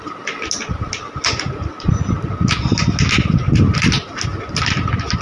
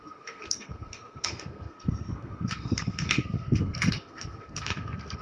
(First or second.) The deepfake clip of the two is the second